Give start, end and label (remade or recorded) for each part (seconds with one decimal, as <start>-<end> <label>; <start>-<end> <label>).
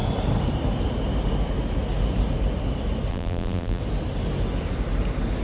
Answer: 0.0-3.1 recorded; 3.1-3.8 remade; 3.8-5.4 recorded